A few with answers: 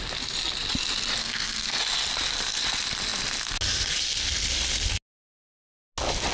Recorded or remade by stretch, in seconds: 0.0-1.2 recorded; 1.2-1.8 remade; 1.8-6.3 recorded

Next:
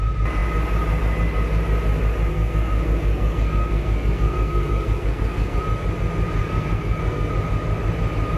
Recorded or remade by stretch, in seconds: 0.0-2.3 recorded; 2.3-5.6 remade; 5.6-6.4 recorded; 6.4-7.3 remade; 7.3-8.4 recorded

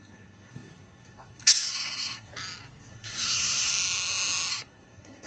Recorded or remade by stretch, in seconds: 0.0-2.3 remade; 2.3-2.9 recorded; 2.9-3.7 remade; 3.7-4.5 recorded; 4.5-5.3 remade

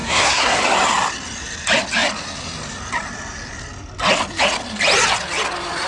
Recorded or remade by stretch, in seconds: 0.0-0.6 remade; 0.6-5.9 recorded

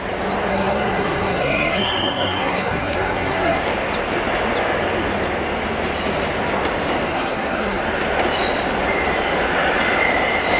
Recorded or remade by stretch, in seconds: 0.0-0.5 recorded; 0.5-3.6 remade; 3.6-7.1 recorded; 7.1-7.8 remade; 7.8-10.6 recorded

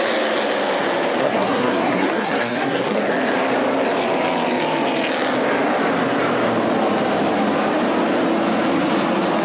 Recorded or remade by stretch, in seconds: 0.0-1.2 recorded; 1.2-3.1 remade; 3.1-9.4 recorded

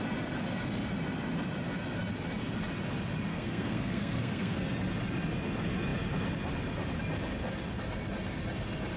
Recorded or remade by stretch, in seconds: 0.0-3.3 recorded; 3.3-4.7 remade; 4.7-9.0 recorded